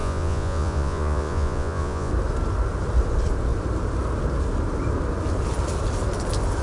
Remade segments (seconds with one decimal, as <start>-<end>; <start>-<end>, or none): 0.0-2.1